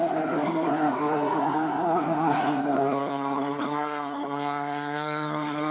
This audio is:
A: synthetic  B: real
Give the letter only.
A